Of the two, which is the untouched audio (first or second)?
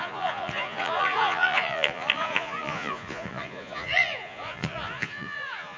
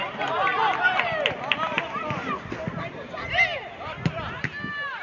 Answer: second